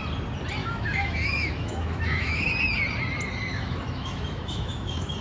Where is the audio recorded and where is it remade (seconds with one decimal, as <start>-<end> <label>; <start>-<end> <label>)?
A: 0.0-0.6 recorded; 0.6-2.5 remade; 2.5-3.5 recorded; 3.5-5.2 remade